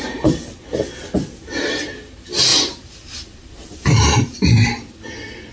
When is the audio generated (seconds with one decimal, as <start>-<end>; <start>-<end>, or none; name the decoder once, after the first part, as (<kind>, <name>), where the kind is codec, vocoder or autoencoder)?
2.5-5.0 (vocoder, BigVGAN v2)